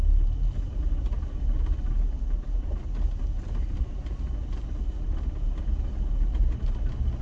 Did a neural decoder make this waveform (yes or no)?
no